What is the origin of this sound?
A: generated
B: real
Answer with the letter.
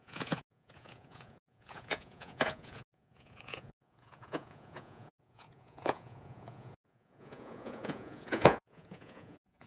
A